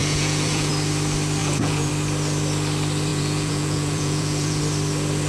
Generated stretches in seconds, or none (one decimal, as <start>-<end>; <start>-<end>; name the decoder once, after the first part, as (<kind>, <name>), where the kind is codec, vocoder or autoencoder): 0.0-0.7 (vocoder, Vocos); 1.4-1.9; 3.1-4.6